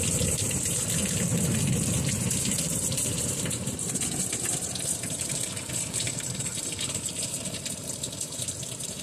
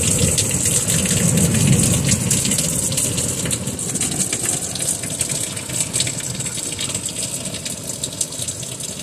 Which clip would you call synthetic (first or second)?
first